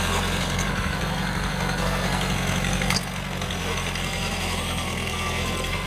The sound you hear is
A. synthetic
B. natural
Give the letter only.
A